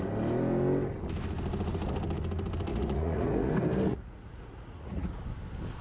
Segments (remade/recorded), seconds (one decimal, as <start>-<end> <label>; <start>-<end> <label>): 0.0-2.7 recorded; 2.7-3.5 remade; 3.5-3.9 recorded; 3.9-5.2 remade; 5.2-5.8 recorded